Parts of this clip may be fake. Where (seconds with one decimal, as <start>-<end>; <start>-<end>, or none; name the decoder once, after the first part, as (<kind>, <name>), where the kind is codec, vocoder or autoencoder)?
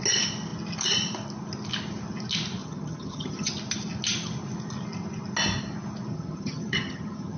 2.6-3.5 (vocoder, HiFi-GAN); 6.1-7.4